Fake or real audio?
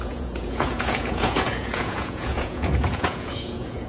fake